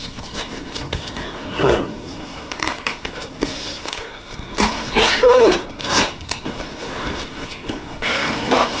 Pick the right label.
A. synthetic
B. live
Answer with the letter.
A